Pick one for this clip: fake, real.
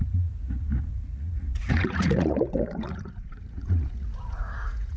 fake